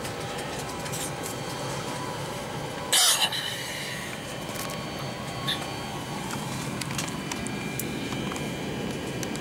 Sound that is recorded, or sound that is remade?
recorded